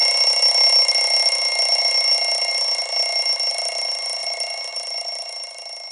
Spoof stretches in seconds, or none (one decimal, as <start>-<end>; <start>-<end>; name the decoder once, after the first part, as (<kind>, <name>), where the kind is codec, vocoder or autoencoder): 3.5-5.9 (vocoder, BigVGAN v2)